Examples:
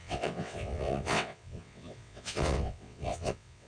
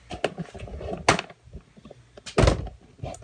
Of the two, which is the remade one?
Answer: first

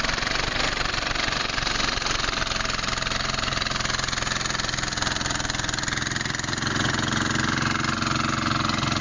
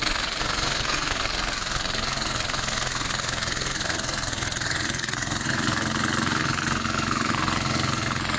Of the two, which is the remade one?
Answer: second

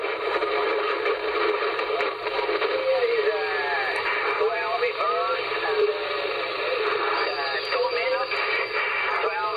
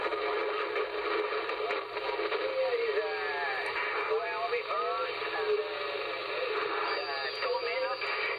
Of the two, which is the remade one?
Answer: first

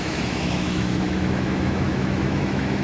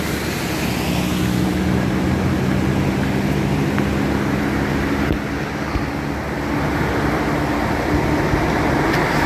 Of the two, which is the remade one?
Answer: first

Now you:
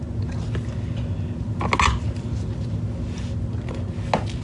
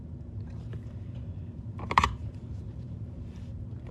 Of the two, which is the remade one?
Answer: second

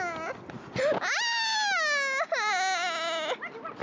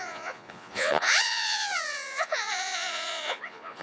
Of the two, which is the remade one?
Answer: second